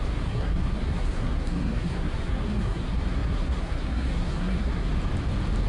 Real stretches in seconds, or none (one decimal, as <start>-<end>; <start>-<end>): 4.9-5.7